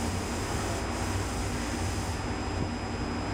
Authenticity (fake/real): real